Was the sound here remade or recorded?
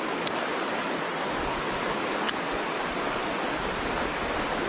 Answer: recorded